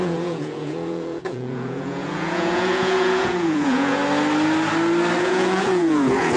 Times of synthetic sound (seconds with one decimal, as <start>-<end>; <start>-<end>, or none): 0.0-4.0; 5.2-6.4